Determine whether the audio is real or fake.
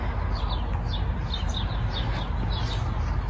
real